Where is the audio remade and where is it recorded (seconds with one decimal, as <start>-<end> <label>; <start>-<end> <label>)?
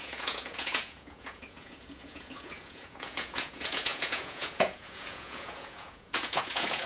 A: 0.0-6.9 remade